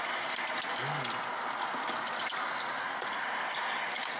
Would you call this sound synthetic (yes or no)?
no